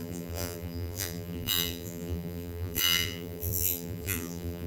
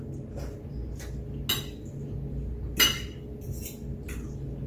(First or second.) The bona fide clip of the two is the second